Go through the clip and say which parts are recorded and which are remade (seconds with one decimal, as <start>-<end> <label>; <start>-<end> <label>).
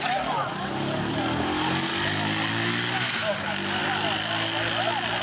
0.0-1.9 remade; 1.9-2.5 recorded; 2.5-3.8 remade; 3.8-5.2 recorded